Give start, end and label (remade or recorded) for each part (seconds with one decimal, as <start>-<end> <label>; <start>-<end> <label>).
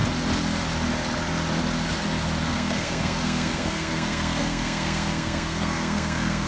0.0-2.4 recorded; 2.4-6.5 remade